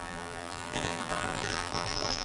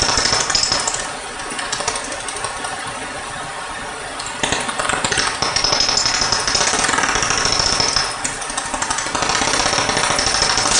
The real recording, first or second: second